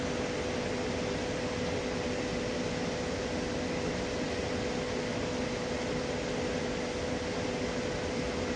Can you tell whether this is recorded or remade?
recorded